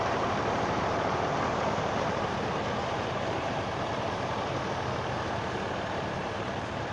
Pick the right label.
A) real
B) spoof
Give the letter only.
B